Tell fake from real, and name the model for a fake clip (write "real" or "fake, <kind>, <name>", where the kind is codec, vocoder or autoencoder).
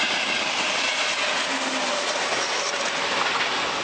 real